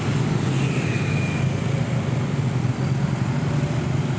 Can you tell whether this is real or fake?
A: real